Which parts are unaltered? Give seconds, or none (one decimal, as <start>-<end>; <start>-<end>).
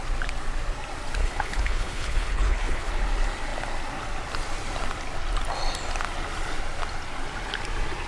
0.0-1.2; 2.9-8.1